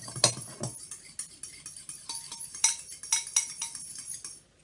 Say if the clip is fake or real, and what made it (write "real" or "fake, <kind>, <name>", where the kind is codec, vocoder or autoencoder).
real